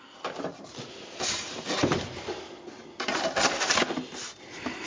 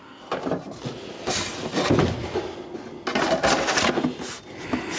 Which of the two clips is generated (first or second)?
first